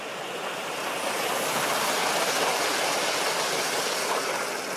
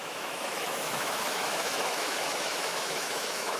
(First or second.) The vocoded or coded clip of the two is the second